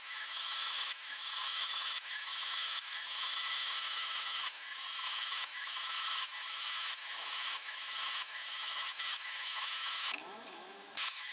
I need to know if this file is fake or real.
fake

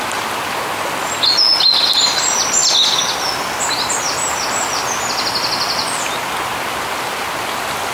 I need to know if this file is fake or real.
real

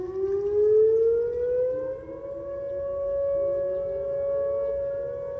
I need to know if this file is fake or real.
real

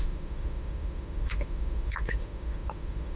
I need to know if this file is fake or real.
fake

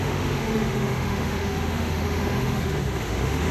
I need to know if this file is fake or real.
fake